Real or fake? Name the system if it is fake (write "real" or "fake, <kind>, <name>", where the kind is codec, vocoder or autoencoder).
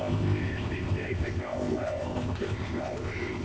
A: fake, codec, ZipCodec